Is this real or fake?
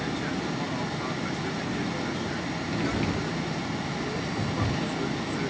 real